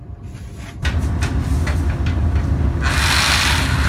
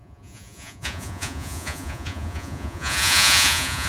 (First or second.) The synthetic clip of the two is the second